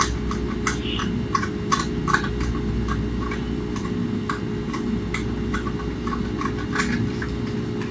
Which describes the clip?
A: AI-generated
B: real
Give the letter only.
B